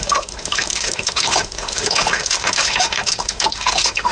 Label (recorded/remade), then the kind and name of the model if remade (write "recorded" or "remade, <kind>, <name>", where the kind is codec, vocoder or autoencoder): remade, autoencoder, DAC-VAE